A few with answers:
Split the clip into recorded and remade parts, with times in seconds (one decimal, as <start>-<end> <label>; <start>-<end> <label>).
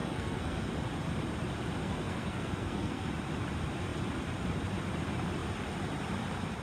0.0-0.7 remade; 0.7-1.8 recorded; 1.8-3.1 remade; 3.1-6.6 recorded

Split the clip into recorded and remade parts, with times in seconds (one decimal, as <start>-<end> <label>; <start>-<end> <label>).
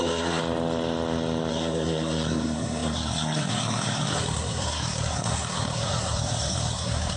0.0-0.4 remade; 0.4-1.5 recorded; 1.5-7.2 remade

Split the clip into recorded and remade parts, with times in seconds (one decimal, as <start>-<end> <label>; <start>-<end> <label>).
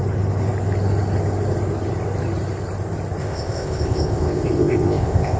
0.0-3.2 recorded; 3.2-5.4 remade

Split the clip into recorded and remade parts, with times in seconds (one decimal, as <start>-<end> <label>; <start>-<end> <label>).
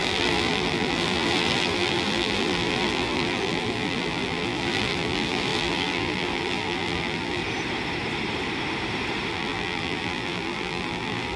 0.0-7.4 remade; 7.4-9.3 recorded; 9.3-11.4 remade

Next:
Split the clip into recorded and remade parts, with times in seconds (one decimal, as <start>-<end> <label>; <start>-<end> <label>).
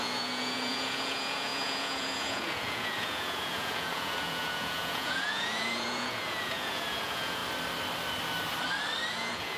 0.0-7.4 remade; 7.4-9.1 recorded; 9.1-9.6 remade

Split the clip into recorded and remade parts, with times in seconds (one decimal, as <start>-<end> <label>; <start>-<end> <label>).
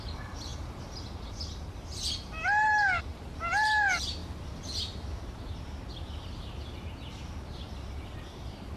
0.0-4.2 remade; 4.2-7.9 recorded; 7.9-8.8 remade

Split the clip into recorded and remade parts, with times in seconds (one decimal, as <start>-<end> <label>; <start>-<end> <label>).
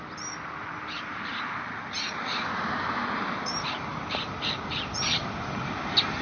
0.0-1.1 recorded; 1.1-4.8 remade; 4.8-6.2 recorded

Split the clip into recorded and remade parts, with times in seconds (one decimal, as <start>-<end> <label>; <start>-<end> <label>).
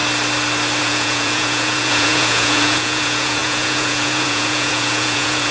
0.0-0.8 recorded; 0.8-5.5 remade